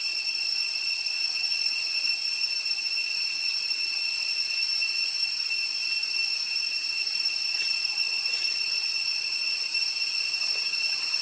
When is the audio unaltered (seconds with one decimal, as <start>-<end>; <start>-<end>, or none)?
2.1-3.1; 4.6-7.0; 9.7-11.2